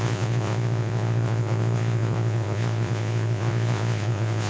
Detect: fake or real fake